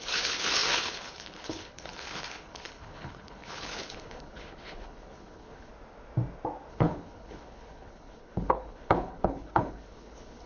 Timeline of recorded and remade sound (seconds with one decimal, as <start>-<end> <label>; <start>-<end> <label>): 0.0-5.7 remade; 5.7-6.7 recorded; 6.7-10.5 remade